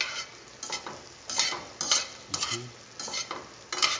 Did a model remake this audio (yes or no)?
no